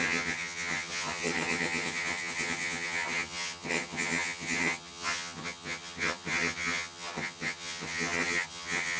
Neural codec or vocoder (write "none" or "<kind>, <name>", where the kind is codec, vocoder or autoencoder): vocoder, HiFi-GAN